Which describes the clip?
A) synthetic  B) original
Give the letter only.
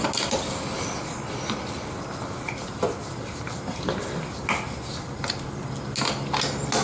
B